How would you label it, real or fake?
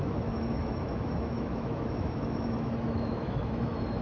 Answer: fake